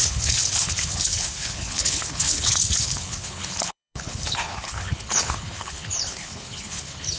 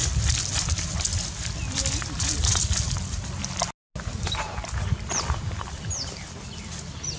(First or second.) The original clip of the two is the second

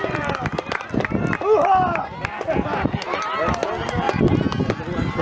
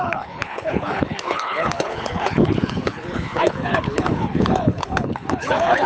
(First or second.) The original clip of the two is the first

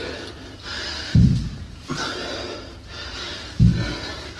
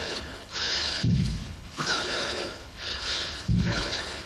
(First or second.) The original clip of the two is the first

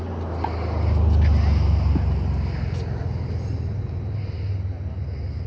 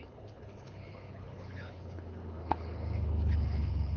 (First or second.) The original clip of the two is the first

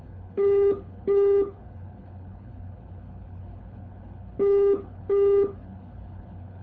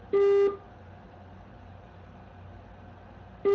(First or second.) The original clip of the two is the second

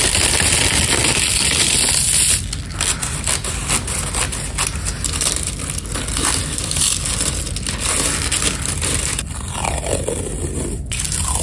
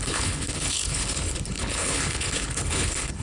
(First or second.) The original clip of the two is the first